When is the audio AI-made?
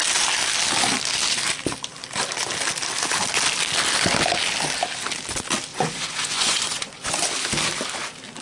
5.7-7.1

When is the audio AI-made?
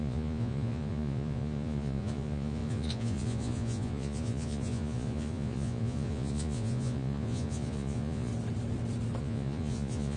0.0-8.3; 9.2-10.2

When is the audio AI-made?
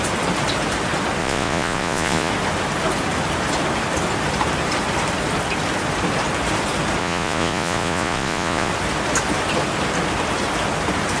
1.2-2.3; 7.0-8.7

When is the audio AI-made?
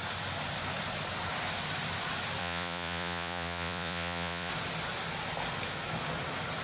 2.4-4.5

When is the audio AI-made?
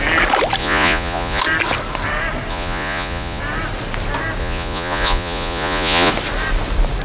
0.6-1.4; 2.5-3.4; 4.4-6.1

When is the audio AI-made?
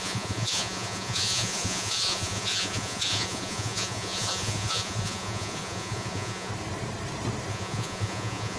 0.0-6.5; 7.5-8.6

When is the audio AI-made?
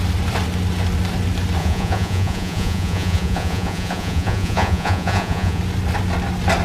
1.6-5.6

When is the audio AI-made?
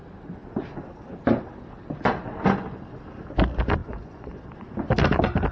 3.8-4.4